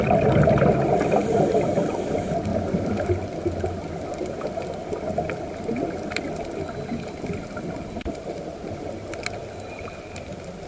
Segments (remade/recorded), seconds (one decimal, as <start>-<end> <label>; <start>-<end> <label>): 0.0-10.7 recorded